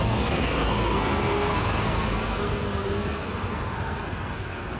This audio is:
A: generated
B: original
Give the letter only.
A